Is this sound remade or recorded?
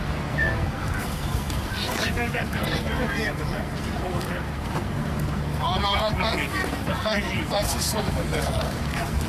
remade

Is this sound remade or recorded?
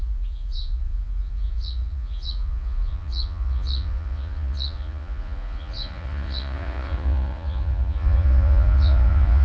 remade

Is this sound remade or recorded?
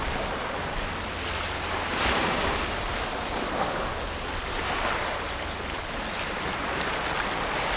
recorded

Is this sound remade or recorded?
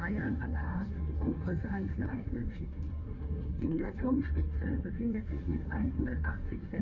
remade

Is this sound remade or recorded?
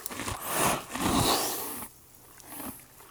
recorded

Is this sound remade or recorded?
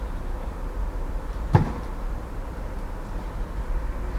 recorded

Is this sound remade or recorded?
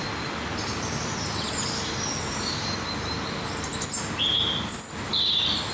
recorded